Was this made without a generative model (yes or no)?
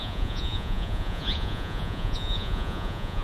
no